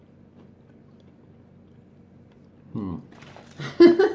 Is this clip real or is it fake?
fake